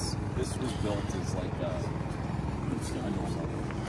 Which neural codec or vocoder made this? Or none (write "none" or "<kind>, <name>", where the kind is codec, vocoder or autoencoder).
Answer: none